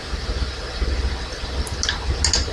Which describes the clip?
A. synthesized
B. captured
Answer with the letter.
B